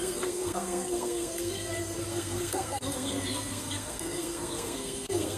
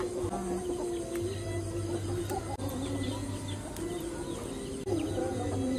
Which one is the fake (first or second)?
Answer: first